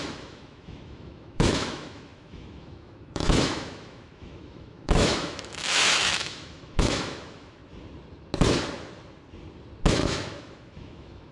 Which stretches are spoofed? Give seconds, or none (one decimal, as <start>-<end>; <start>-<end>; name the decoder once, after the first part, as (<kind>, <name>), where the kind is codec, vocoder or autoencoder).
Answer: 0.0-7.6 (autoencoder, DAC-VAE); 9.9-11.3